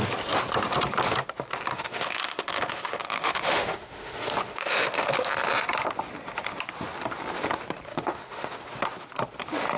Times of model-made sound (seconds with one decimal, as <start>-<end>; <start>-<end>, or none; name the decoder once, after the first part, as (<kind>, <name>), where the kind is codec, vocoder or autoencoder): 1.7-5.3 (autoencoder, DAC-VAE); 7.9-8.5